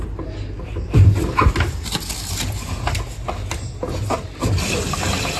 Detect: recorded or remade recorded